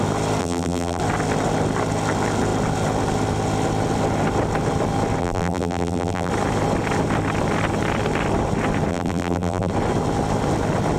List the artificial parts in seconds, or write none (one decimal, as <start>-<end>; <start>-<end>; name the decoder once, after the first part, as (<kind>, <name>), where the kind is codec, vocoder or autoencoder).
0.4-1.0 (vocoder, BigVGAN v2); 5.2-6.3; 8.9-9.7